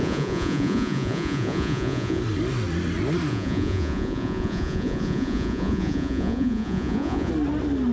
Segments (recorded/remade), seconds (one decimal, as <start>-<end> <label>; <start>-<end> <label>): 0.0-2.2 remade; 2.2-3.3 recorded; 3.3-7.3 remade; 7.3-7.9 recorded